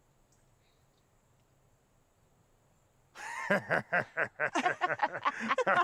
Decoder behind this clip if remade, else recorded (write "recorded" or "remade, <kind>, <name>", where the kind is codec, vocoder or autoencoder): recorded